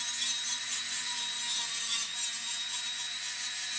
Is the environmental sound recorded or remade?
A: recorded